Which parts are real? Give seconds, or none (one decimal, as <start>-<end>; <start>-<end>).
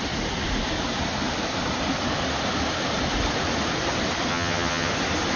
0.0-4.3; 4.9-5.4